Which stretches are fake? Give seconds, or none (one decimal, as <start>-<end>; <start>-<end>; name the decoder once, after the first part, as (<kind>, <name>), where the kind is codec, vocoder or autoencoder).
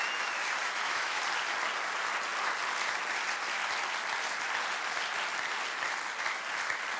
0.6-1.2 (autoencoder, DAC-VAE)